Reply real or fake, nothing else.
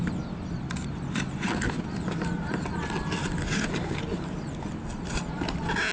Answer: real